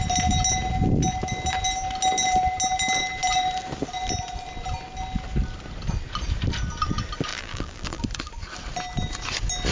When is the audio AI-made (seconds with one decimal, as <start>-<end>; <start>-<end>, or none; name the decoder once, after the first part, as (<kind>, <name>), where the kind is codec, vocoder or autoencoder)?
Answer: 7.3-8.0 (vocoder, BigVGAN v2)